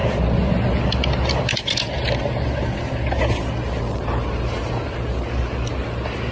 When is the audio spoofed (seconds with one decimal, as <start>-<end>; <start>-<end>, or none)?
none